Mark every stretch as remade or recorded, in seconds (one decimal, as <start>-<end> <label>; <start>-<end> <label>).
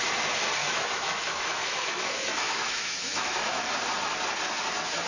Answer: 0.0-0.6 recorded; 0.6-3.7 remade; 3.7-5.1 recorded